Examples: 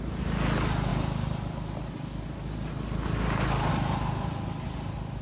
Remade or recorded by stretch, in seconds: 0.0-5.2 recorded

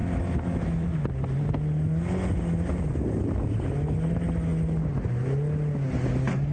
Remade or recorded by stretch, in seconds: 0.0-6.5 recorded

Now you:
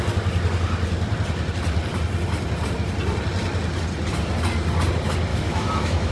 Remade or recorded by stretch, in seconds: 0.0-5.3 recorded; 5.3-6.1 remade

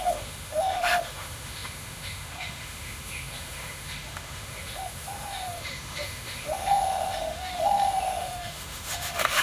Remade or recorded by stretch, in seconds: 0.0-9.4 remade

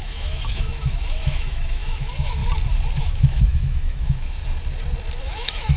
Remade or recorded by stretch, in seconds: 0.0-2.4 remade; 2.4-3.0 recorded; 3.0-4.4 remade; 4.4-5.2 recorded; 5.2-5.8 remade

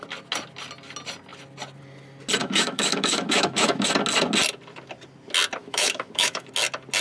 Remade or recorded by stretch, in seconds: 0.0-2.4 recorded; 2.4-3.9 remade; 3.9-5.6 recorded; 5.6-6.5 remade; 6.5-7.0 recorded